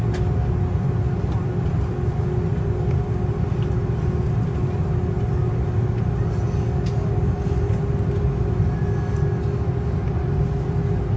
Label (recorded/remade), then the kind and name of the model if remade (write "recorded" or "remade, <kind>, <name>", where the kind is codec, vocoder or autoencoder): recorded